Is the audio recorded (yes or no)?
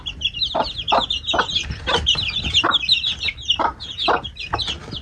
yes